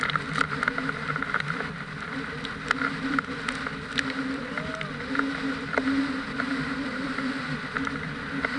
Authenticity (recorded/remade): recorded